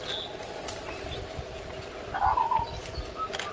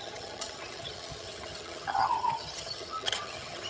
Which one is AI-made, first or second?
second